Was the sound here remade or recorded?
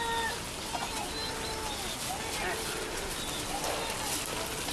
recorded